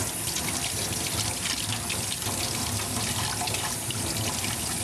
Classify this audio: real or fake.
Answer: real